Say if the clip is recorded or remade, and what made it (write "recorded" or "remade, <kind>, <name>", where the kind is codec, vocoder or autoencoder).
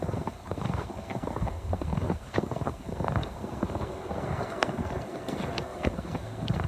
remade, codec, SNAC